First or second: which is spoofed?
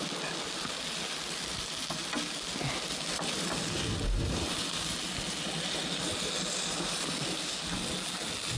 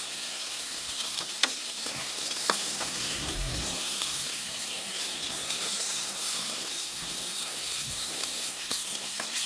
second